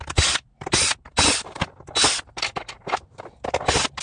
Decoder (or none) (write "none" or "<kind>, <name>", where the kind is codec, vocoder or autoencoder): none